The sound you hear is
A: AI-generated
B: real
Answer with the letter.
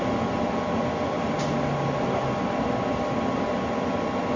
B